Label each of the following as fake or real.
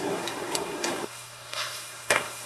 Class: fake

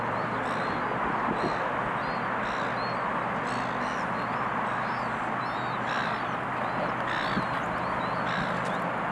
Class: real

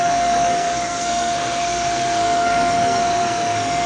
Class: fake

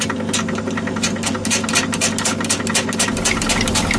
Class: real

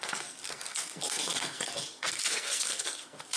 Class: fake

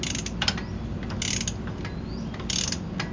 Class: real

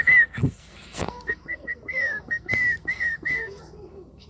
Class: fake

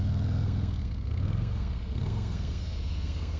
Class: fake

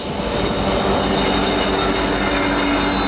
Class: real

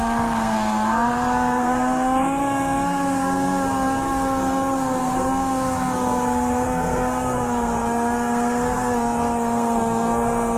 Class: fake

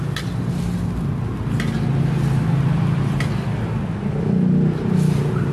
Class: real